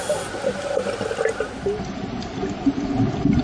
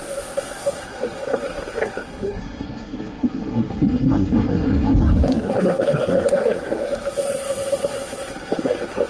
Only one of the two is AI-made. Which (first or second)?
second